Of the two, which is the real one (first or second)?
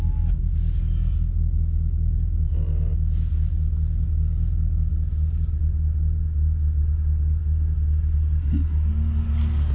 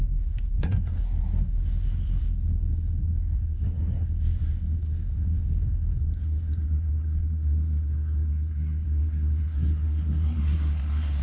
first